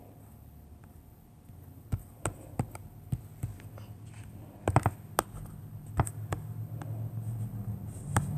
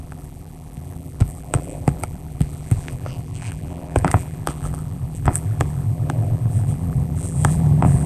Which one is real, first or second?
first